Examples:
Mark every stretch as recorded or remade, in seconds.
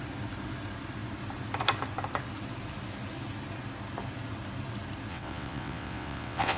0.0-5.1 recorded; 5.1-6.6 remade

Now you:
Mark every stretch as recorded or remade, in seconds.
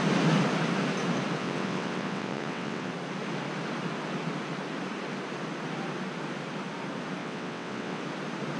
0.0-1.4 recorded; 1.4-2.9 remade; 2.9-7.2 recorded; 7.2-8.0 remade; 8.0-8.6 recorded